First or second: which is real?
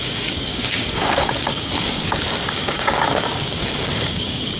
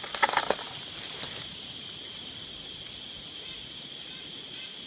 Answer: second